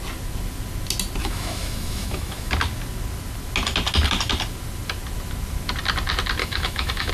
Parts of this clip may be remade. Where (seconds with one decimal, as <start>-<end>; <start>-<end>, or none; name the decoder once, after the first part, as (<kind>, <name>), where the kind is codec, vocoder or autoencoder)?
1.2-2.5 (autoencoder, DAC-VAE); 6.4-7.1